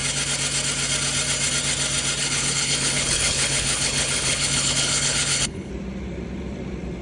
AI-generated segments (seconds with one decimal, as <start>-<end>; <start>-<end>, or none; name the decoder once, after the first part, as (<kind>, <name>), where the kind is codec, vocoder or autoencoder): 2.2-5.7 (codec, HILCodec)